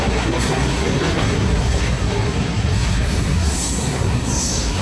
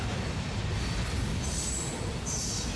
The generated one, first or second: first